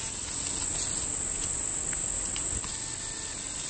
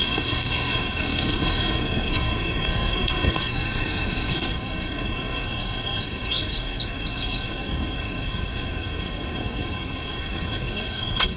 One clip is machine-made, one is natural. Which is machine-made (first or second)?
second